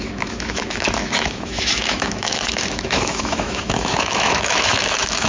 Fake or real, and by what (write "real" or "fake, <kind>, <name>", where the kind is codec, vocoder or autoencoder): fake, autoencoder, DAC-VAE